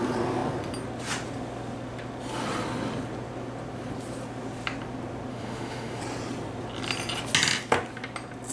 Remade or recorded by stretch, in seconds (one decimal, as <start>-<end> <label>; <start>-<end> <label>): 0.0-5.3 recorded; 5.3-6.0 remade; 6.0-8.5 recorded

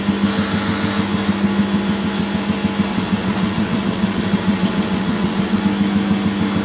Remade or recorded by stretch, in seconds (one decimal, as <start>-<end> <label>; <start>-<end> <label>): 0.0-2.9 recorded; 2.9-5.6 remade; 5.6-6.6 recorded

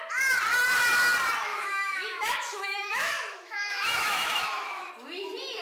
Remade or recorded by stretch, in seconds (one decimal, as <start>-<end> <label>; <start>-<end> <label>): 0.0-1.5 recorded; 1.5-4.9 remade; 4.9-5.6 recorded